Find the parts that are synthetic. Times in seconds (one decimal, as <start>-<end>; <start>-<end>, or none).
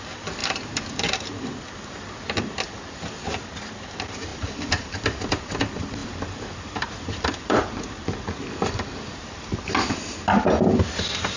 4.3-5.2; 6.0-9.6